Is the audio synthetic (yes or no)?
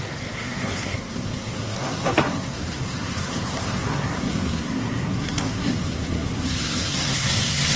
yes